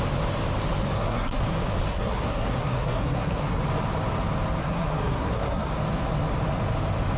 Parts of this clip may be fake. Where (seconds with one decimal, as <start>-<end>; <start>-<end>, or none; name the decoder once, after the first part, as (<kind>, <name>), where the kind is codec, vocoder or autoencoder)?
0.9-1.4 (codec, SNAC); 1.9-3.6; 4.6-5.7